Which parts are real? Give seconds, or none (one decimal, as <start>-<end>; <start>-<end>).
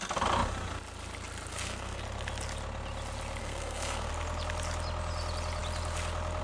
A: 0.0-1.5; 2.0-3.4; 4.1-6.4